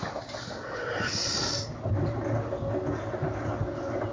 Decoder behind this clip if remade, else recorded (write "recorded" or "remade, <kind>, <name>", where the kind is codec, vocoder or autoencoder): recorded